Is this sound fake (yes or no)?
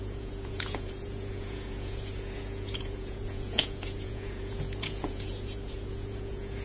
yes